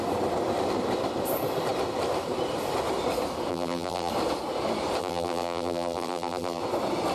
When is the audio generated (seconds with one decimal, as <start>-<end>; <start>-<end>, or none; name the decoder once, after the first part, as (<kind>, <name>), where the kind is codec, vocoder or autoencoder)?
3.5-4.1 (vocoder, BigVGAN v2); 5.0-6.6